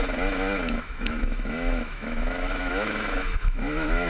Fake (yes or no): yes